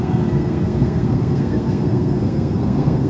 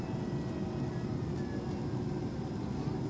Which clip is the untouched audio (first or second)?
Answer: second